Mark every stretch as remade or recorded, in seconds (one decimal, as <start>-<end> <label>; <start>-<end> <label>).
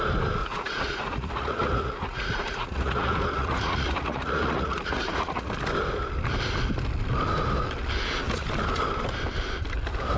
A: 0.0-0.4 recorded; 0.4-5.5 remade; 5.5-10.2 recorded